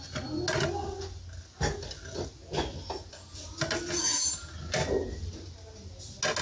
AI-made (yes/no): no